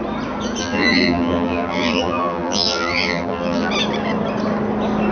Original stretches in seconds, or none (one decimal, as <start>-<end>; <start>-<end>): 0.0-0.6; 3.7-5.1

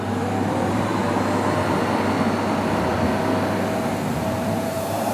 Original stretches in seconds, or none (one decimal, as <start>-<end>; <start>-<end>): 1.0-4.1

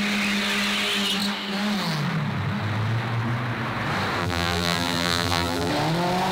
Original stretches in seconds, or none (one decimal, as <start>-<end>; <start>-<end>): 0.0-4.2; 5.7-6.3

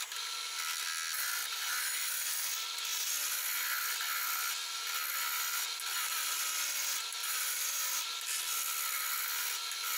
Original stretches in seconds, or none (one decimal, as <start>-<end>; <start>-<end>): 0.0-1.4; 2.0-7.2; 8.4-10.0